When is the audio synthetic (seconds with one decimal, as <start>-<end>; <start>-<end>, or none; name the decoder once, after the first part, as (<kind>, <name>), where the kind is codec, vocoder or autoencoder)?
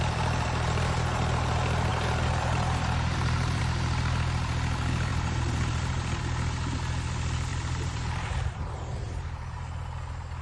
1.9-3.6 (vocoder, BigVGAN v2); 5.1-6.2; 7.5-9.8